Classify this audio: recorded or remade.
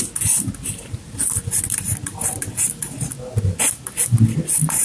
recorded